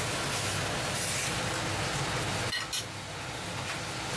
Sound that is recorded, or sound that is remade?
recorded